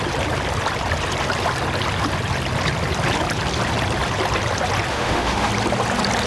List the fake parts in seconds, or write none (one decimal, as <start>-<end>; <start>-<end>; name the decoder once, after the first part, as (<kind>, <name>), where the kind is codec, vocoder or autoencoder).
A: 4.9-5.5 (autoencoder, DAC-VAE)